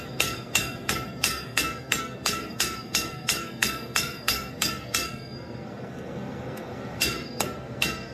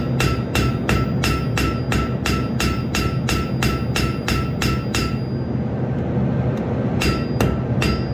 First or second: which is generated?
first